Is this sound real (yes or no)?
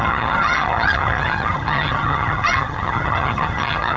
no